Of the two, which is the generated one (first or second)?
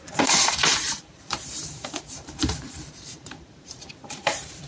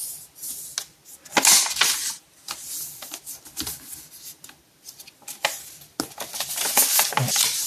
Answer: first